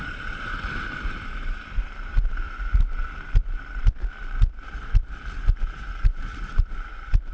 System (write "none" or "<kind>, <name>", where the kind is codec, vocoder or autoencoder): vocoder, BigVGAN v2